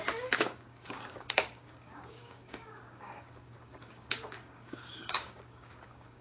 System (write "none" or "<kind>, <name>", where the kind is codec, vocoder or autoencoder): codec, DAC